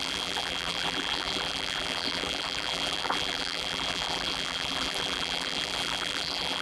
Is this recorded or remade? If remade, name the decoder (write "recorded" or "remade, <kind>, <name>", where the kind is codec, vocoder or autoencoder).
remade, vocoder, BigVGAN v2